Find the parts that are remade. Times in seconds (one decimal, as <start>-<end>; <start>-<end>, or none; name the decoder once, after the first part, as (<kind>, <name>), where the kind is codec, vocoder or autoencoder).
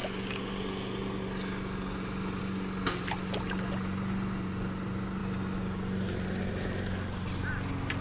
none